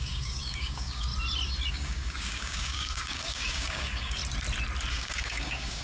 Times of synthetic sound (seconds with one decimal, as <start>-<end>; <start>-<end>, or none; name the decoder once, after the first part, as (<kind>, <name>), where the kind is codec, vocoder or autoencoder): 0.0-1.1 (codec, DAC); 1.7-4.2; 4.9-5.8